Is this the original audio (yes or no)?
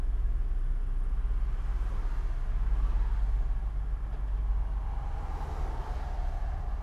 yes